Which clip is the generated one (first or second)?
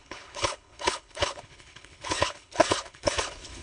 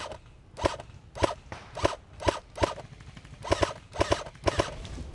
first